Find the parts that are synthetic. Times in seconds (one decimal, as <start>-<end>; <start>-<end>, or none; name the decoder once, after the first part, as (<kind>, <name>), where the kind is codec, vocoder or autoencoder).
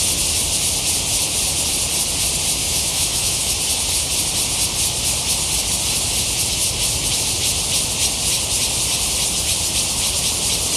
2.6-3.5 (autoencoder, DAC-VAE)